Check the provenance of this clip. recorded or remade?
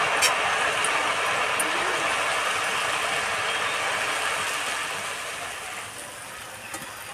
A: recorded